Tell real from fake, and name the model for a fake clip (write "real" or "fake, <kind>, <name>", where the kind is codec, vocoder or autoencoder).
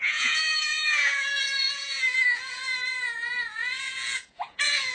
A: fake, vocoder, Vocos